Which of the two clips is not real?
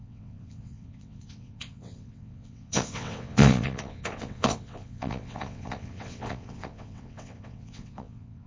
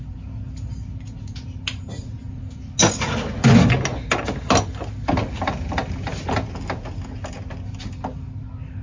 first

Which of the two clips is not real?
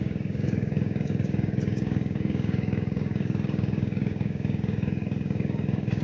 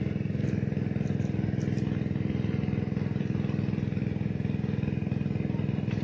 first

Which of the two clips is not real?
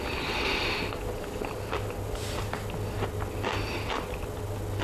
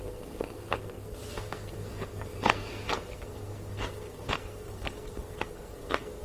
second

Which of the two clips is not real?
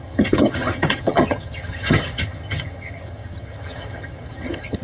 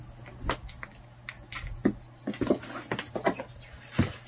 first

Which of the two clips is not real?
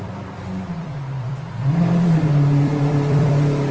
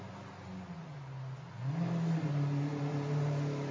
first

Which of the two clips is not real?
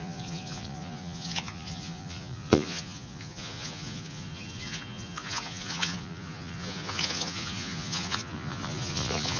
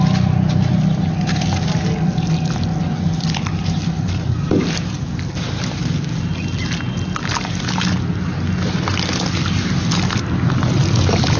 first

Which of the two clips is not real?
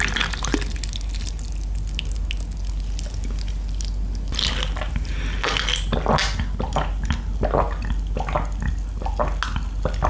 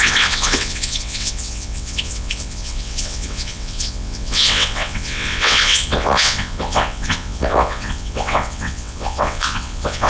second